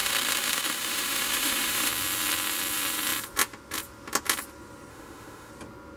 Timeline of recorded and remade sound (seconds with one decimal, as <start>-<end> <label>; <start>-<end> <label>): 0.0-1.9 remade; 1.9-4.9 recorded; 4.9-5.5 remade; 5.5-6.0 recorded